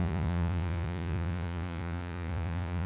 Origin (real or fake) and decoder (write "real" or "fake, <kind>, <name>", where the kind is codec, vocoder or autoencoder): fake, vocoder, Vocos